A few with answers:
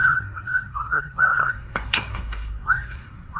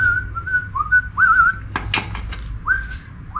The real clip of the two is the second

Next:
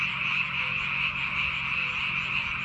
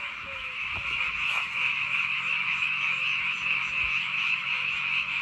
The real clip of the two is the first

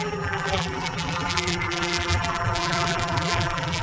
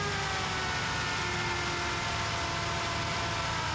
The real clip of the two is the second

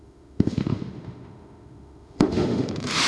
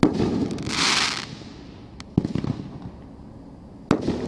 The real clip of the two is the second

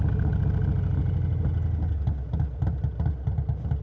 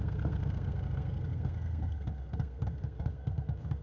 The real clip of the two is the first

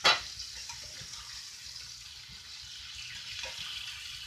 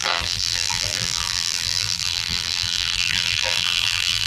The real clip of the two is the first